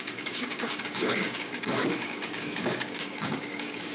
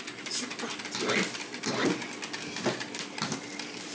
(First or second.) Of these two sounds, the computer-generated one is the first